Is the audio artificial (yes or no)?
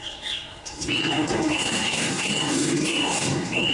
yes